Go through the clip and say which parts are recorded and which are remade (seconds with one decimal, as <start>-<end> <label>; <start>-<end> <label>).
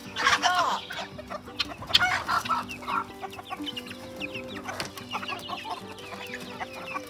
0.0-0.9 remade; 0.9-7.1 recorded